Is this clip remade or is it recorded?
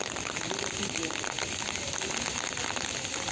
recorded